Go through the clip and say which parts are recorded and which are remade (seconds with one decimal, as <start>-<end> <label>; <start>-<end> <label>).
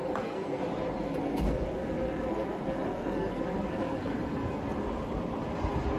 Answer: 0.0-0.6 remade; 0.6-1.0 recorded; 1.0-4.6 remade; 4.6-6.0 recorded